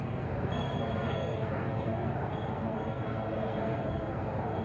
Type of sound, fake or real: fake